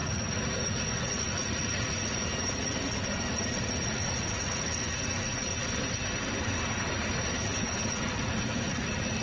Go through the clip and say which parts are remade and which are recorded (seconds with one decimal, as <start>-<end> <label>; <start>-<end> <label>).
0.0-5.5 remade; 5.5-7.9 recorded; 7.9-9.2 remade